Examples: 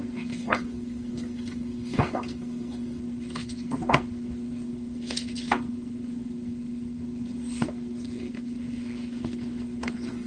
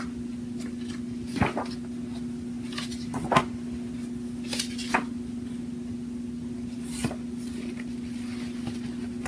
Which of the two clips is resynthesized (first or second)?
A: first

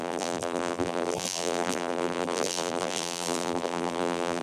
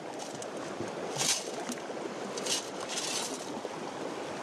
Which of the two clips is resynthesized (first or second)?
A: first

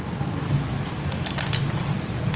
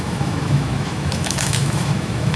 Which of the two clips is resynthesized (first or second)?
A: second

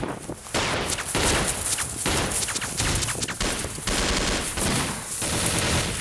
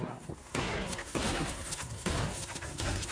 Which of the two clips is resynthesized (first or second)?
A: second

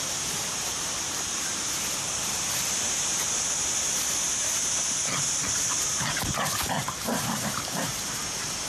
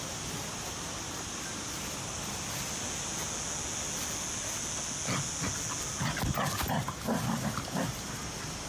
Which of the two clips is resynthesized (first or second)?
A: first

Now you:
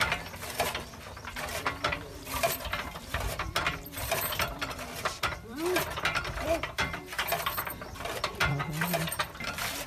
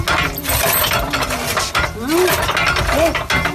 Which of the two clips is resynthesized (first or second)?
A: first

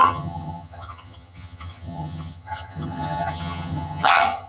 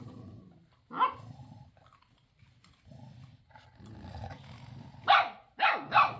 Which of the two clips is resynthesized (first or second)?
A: first